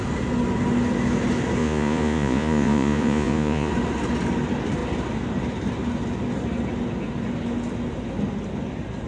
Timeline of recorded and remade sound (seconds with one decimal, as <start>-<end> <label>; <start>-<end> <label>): 0.0-1.6 recorded; 1.6-3.7 remade; 3.7-9.1 recorded